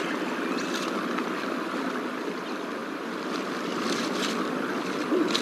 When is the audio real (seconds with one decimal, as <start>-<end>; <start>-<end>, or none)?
0.0-5.4